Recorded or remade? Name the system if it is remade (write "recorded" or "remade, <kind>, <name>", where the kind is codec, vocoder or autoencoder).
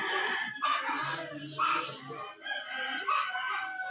recorded